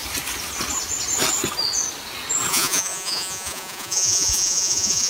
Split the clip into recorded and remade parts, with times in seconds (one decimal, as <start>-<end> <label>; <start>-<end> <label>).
0.0-2.5 recorded; 2.5-5.1 remade